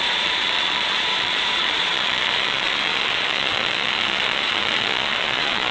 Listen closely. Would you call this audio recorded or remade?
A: remade